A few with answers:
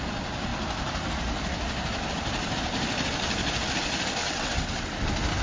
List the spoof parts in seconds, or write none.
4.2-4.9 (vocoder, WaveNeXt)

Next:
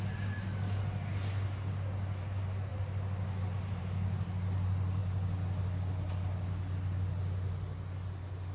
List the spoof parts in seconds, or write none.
none

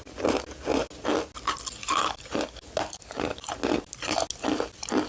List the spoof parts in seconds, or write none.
none

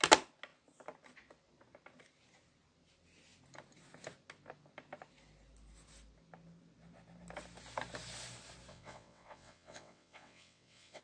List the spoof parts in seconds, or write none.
8.7-11.0 (vocoder, WaveNeXt)

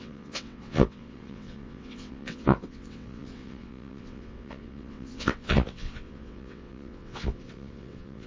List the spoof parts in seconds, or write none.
0.0-8.3 (vocoder, WaveNeXt)

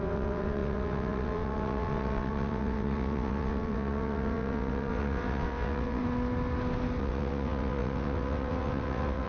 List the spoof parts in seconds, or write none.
0.0-6.0 (vocoder, WaveNeXt); 7.0-9.3